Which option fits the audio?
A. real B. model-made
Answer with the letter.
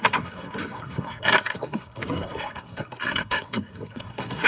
B